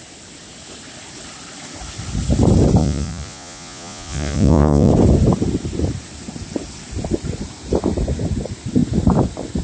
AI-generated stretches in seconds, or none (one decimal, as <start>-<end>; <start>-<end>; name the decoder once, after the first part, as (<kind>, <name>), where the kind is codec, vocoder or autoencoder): 2.8-4.9 (vocoder, Vocos)